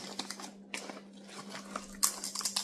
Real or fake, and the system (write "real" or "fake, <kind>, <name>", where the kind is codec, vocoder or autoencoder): real